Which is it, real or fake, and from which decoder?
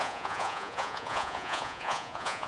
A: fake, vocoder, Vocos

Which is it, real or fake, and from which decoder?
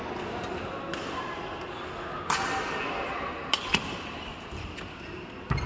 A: real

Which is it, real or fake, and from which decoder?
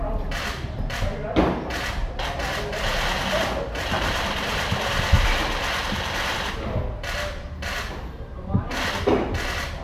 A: real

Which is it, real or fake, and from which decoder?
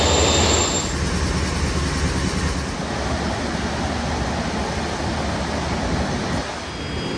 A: real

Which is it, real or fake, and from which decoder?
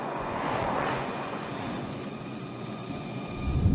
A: fake, vocoder, Vocos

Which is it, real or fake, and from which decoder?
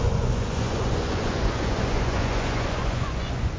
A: fake, vocoder, Vocos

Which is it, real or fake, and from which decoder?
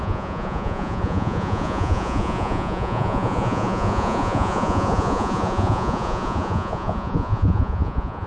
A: fake, vocoder, Vocos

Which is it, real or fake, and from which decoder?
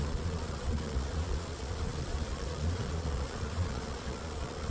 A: fake, vocoder, Vocos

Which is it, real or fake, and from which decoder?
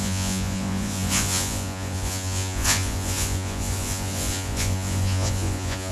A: fake, vocoder, Vocos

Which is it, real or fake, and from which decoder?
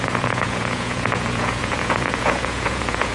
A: fake, vocoder, Vocos